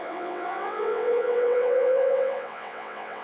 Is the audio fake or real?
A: fake